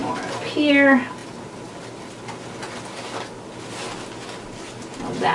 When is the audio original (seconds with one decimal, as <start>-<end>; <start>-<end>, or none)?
0.0-5.3